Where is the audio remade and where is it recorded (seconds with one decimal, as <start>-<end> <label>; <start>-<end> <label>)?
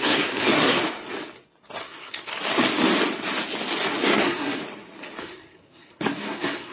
0.0-0.8 remade; 0.8-1.8 recorded; 1.8-2.3 remade; 2.3-4.0 recorded; 4.0-4.6 remade; 4.6-5.2 recorded; 5.2-6.7 remade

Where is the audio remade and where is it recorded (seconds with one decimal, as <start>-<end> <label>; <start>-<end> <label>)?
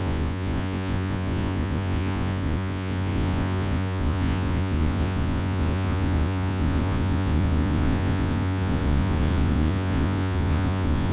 0.0-11.1 remade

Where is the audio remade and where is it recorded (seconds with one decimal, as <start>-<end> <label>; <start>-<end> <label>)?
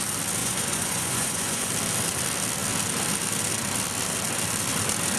0.0-0.4 recorded; 0.4-1.7 remade; 1.7-5.2 recorded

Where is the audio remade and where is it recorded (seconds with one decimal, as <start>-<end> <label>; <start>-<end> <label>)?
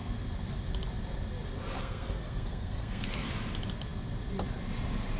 0.0-1.8 recorded; 1.8-3.3 remade; 3.3-5.2 recorded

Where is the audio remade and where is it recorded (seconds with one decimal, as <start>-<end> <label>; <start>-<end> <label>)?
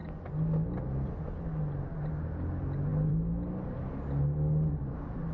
0.0-2.9 recorded; 2.9-3.9 remade; 3.9-5.3 recorded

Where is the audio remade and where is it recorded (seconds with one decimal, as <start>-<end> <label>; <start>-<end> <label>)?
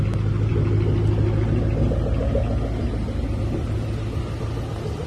0.0-5.1 recorded